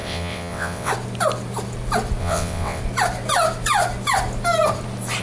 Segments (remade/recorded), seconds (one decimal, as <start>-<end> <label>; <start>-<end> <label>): 0.0-0.9 remade; 0.9-2.2 recorded; 2.2-2.8 remade; 2.8-5.2 recorded